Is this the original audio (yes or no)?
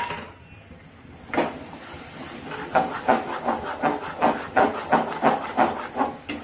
yes